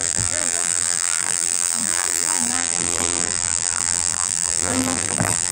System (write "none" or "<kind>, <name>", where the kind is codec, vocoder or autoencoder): vocoder, BigVGAN v2